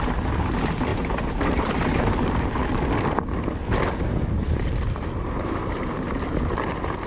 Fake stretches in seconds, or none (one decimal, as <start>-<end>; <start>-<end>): 0.0-2.6; 4.4-7.1